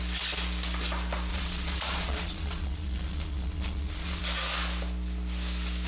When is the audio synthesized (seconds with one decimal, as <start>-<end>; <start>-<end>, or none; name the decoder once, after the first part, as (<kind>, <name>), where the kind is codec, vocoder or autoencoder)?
1.3-4.2 (vocoder, Vocos)